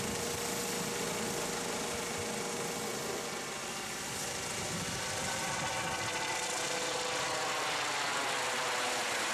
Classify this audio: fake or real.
real